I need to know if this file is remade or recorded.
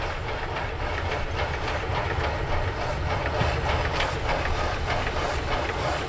recorded